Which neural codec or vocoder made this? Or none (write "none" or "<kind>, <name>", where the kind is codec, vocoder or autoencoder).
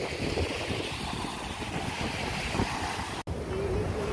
none